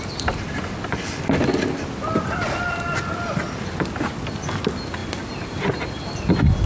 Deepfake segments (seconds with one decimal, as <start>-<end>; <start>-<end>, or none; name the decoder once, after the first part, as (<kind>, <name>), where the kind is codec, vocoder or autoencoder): none